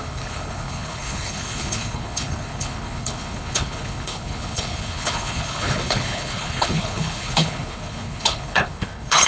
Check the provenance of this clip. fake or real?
fake